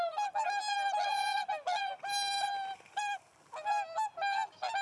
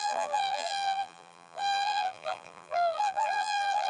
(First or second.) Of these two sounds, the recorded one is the first